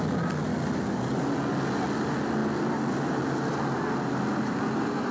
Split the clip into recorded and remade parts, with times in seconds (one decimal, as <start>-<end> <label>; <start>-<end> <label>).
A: 0.0-5.1 recorded